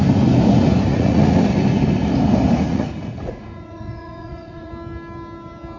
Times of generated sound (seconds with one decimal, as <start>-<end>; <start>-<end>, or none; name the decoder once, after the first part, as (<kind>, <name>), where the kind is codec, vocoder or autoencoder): 0.9-1.4 (vocoder, Vocos); 2.7-4.7